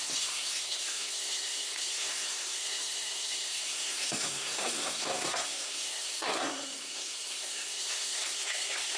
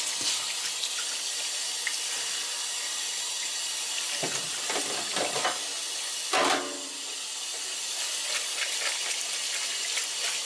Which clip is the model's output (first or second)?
first